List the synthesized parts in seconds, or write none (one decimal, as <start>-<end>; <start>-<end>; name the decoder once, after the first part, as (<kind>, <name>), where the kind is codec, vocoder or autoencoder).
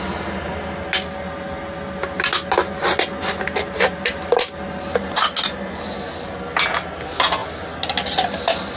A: none